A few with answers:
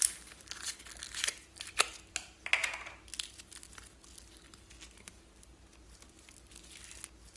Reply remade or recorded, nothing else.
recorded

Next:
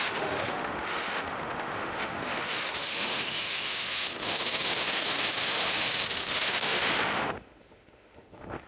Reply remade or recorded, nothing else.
remade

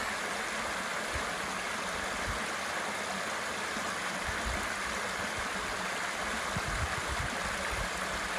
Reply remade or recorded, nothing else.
recorded